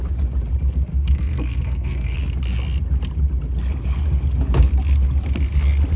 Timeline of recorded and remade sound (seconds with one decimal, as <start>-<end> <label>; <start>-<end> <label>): 0.0-0.9 recorded; 0.9-2.2 remade; 2.2-6.0 recorded